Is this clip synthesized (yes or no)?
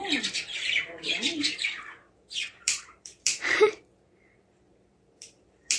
yes